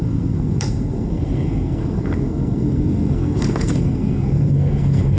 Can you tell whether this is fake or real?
fake